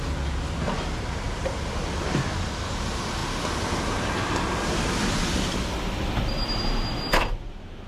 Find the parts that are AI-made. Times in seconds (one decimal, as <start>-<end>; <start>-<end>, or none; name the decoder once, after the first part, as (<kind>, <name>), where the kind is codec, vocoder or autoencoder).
none